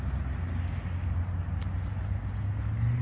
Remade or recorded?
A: recorded